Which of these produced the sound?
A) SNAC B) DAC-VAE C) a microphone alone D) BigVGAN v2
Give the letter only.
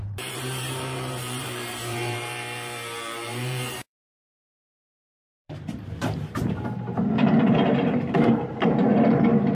D